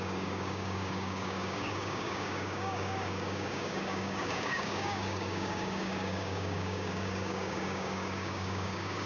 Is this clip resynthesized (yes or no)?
yes